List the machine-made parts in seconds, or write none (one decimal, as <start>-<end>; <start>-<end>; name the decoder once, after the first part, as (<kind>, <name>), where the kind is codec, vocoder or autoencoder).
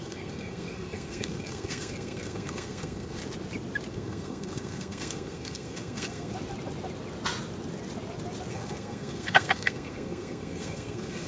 0.0-3.2 (codec, SNAC); 3.9-6.3; 8.5-11.3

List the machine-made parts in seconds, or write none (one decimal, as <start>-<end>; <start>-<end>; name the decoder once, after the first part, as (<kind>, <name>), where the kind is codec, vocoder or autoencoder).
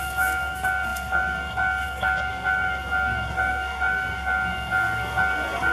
0.0-5.7 (codec, SNAC)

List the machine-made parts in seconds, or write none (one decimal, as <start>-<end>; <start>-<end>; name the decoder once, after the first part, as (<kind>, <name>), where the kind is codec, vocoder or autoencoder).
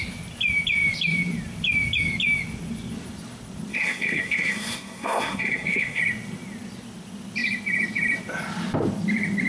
3.7-6.0 (codec, SNAC)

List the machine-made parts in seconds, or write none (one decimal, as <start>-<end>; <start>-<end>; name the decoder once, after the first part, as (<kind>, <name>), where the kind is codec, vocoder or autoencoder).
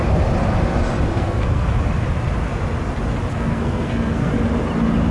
1.1-1.7 (codec, SNAC); 3.3-4.3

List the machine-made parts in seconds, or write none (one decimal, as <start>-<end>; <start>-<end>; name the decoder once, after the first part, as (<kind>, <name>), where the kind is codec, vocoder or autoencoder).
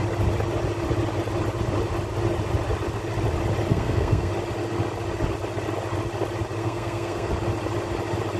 3.7-4.3 (codec, SNAC); 6.6-7.3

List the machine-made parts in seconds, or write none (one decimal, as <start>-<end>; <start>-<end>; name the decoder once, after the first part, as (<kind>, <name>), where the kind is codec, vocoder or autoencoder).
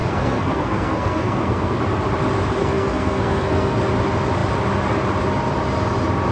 0.0-1.8 (codec, SNAC); 2.6-3.8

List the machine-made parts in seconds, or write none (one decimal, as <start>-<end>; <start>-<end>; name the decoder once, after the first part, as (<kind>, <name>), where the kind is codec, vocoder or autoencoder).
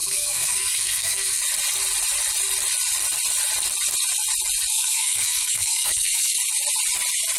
0.0-1.4 (codec, SNAC); 4.7-6.4